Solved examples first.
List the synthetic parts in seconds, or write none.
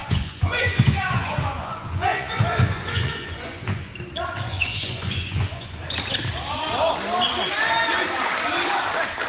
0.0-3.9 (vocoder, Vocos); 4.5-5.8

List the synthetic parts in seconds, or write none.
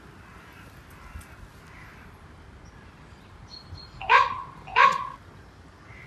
none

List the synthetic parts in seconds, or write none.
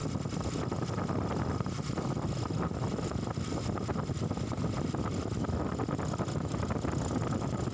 none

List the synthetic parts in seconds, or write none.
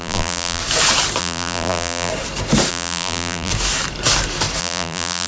0.0-0.6 (vocoder, BigVGAN v2); 1.2-2.1; 2.7-3.5; 4.6-5.3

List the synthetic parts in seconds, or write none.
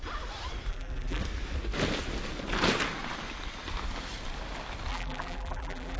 0.7-1.2 (vocoder, BigVGAN v2); 4.9-6.0